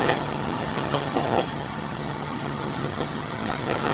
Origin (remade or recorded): remade